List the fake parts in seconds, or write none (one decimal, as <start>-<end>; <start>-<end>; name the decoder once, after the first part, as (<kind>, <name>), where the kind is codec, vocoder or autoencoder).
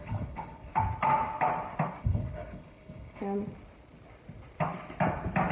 0.0-0.7 (codec, HILCodec); 2.0-3.2